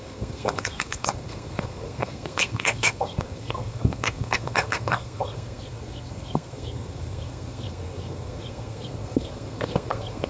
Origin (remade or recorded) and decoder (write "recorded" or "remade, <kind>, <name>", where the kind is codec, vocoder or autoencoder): remade, codec, SNAC